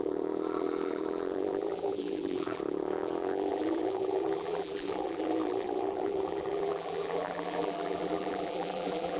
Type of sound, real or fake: fake